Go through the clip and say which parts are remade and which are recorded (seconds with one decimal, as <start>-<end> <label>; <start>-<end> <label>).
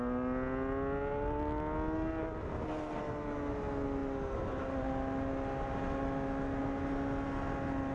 0.0-7.9 recorded